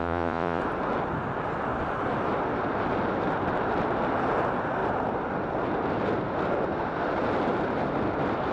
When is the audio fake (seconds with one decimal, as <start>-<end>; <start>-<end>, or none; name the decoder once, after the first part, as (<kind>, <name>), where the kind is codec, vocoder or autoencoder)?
0.0-0.6 (vocoder, Vocos)